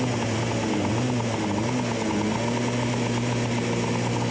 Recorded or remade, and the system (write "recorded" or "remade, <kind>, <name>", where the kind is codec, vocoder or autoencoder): recorded